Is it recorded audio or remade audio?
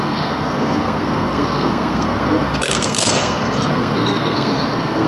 remade